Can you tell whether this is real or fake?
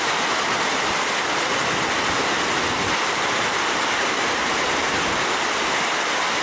real